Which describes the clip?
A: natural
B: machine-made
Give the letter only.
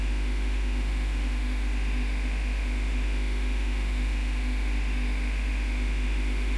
B